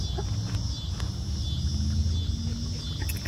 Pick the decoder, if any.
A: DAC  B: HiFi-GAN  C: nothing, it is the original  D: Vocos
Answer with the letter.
C